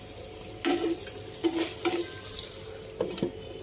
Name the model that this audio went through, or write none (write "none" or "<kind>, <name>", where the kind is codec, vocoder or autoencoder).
none